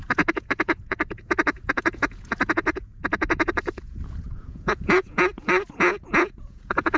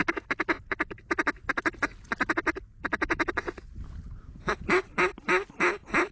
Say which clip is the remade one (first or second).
first